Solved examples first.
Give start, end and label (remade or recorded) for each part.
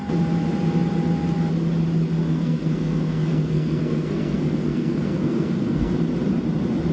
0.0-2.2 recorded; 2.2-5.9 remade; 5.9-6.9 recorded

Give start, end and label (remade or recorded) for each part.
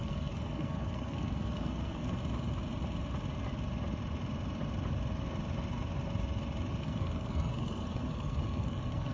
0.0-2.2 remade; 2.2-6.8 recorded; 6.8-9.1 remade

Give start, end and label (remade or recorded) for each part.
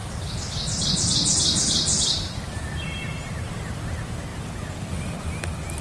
0.0-5.8 recorded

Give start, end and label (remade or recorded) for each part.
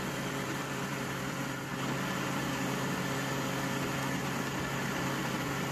0.0-1.7 remade; 1.7-4.9 recorded; 4.9-5.7 remade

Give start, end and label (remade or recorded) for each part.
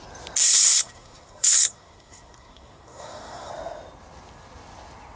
0.0-0.4 recorded; 0.4-3.5 remade; 3.5-5.2 recorded